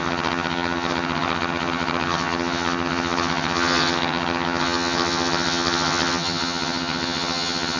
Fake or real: fake